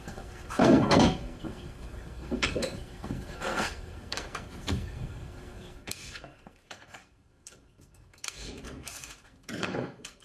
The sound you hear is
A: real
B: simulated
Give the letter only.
B